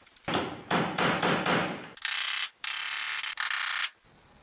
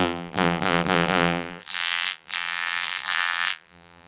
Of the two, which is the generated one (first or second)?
second